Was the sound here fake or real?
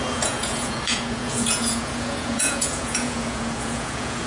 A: fake